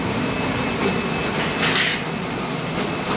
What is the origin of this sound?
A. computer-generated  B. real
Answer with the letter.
B